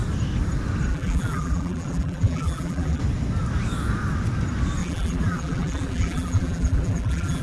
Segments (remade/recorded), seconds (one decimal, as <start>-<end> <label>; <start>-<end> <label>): 0.0-0.9 recorded; 0.9-3.0 remade; 3.0-4.8 recorded; 4.8-7.4 remade